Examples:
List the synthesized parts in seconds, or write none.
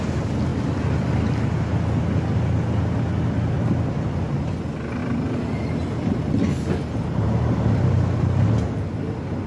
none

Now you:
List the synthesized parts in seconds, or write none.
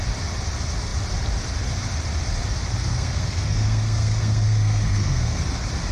2.9-5.4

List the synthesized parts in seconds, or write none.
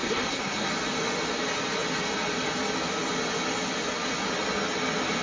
0.0-0.7